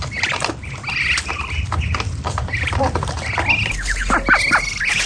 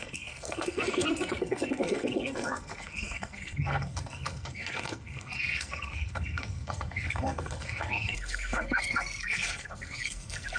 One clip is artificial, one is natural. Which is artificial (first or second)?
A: second